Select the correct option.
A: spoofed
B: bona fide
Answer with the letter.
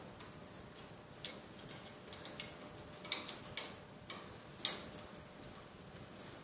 B